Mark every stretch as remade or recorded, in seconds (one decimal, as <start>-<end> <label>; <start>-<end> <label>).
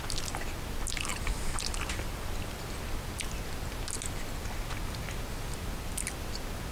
0.0-6.7 recorded